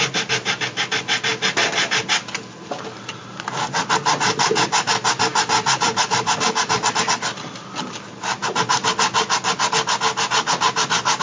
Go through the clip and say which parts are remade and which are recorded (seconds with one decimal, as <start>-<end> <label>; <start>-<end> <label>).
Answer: 0.0-11.2 recorded